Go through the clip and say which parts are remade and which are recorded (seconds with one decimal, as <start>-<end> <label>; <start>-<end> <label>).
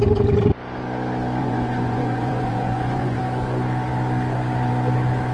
0.0-1.4 recorded; 1.4-3.2 remade; 3.2-5.3 recorded